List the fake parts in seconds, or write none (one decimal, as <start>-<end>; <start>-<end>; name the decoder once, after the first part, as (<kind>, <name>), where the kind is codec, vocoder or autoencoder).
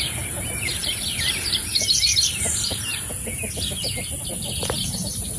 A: 0.0-2.9 (vocoder, BigVGAN v2); 3.5-5.4